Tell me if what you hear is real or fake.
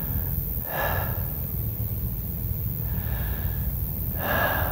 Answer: real